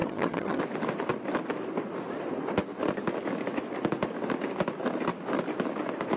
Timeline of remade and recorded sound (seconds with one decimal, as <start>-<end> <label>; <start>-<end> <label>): 0.0-0.6 remade; 0.6-6.2 recorded